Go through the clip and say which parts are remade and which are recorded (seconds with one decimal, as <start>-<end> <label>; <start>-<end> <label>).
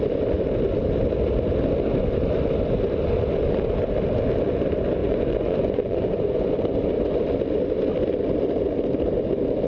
0.0-5.0 recorded; 5.0-6.5 remade; 6.5-9.7 recorded